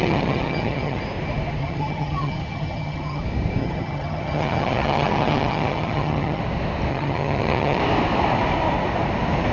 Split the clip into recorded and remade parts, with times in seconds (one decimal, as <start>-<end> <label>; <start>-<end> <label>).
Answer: 0.0-1.0 remade; 1.0-1.6 recorded; 1.6-3.2 remade; 3.2-3.6 recorded; 3.6-6.4 remade; 6.4-6.9 recorded; 6.9-7.8 remade; 7.8-9.5 recorded